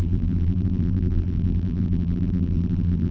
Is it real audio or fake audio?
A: fake